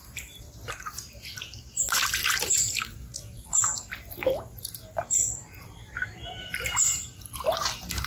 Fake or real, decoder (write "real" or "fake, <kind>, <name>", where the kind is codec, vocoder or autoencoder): fake, vocoder, BigVGAN v2